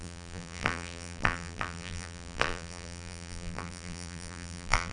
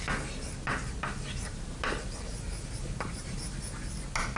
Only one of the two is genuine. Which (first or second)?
second